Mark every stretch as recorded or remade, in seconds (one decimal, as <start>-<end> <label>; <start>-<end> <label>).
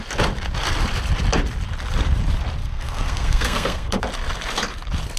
0.0-2.6 recorded; 2.6-4.0 remade; 4.0-5.2 recorded